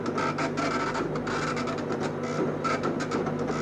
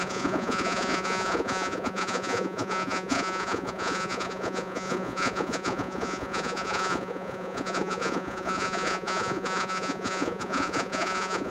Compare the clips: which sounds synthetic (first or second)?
second